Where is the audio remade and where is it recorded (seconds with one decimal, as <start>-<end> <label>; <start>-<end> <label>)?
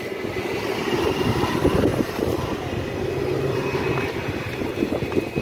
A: 0.0-5.4 recorded